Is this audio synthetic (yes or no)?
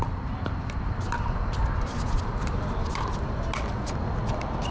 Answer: no